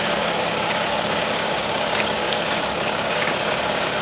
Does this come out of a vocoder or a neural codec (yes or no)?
yes